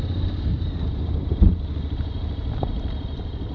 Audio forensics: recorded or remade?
recorded